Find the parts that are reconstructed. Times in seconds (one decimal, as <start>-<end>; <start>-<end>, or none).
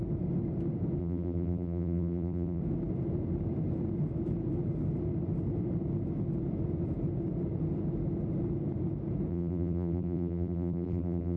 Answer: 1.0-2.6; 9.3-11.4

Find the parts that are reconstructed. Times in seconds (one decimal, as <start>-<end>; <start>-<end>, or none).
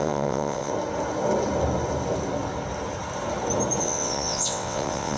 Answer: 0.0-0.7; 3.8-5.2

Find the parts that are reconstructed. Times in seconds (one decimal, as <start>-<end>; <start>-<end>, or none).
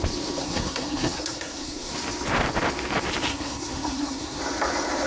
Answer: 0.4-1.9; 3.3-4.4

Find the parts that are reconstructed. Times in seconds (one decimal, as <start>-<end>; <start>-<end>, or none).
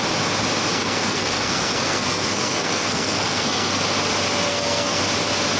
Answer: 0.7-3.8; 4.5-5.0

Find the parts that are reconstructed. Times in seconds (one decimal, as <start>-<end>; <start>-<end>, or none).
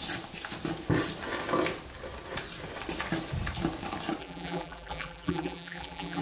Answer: 4.2-6.2